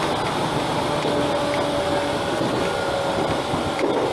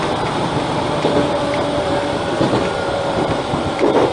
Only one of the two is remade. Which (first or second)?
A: second